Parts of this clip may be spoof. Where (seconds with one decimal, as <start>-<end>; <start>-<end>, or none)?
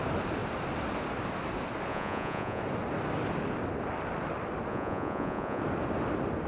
1.9-2.6; 4.7-5.6